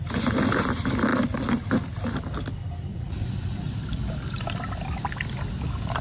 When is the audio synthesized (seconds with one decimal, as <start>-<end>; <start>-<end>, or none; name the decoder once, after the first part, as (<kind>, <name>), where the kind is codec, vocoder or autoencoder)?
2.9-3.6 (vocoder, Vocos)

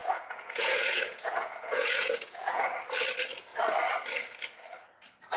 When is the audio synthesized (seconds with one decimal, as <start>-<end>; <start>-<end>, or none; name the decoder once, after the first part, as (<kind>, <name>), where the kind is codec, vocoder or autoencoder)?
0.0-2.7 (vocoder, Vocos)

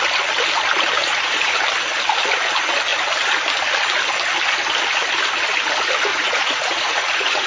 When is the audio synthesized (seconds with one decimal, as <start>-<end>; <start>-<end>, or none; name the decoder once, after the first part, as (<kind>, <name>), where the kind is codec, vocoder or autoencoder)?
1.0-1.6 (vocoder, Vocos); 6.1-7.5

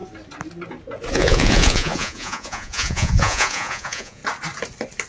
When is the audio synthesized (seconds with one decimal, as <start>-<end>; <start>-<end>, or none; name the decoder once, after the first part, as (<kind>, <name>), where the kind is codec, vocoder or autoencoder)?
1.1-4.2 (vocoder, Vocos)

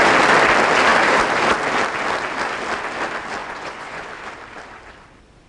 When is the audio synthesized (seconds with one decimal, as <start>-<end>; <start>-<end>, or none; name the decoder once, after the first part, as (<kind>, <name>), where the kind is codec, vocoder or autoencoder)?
3.4-4.1 (vocoder, Vocos)

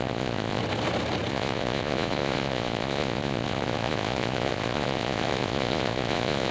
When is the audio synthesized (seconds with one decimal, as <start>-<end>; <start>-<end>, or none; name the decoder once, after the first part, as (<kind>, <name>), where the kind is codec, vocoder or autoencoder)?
0.0-0.6 (vocoder, Vocos); 1.3-6.5

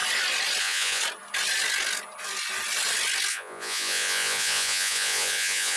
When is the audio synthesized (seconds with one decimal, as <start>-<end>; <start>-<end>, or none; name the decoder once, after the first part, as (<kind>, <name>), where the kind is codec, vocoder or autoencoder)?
0.6-1.0 (vocoder, Vocos); 3.3-5.8

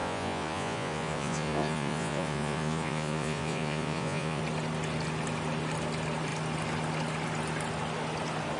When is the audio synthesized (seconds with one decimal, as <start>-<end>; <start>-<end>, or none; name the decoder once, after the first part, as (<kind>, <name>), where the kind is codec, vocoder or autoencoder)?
0.0-4.4 (vocoder, Vocos)